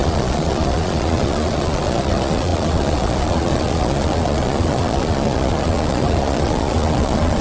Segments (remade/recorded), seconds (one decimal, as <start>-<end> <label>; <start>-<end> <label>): 0.0-7.4 remade